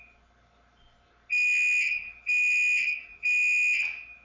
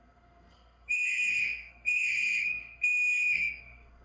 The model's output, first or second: second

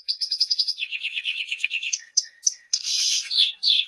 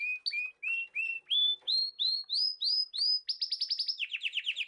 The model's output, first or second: first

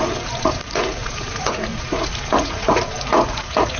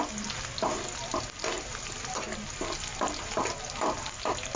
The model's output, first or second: first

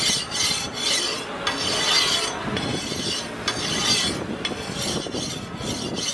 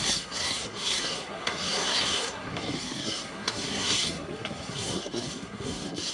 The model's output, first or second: second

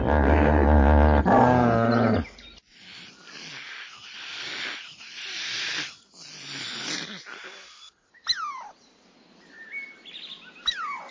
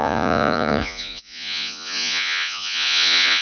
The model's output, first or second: second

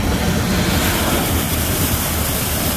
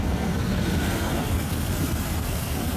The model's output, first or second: second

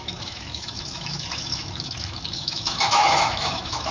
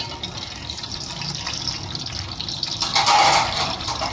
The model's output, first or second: first